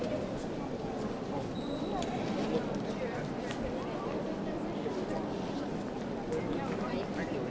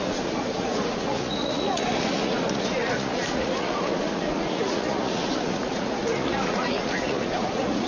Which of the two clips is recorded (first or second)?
first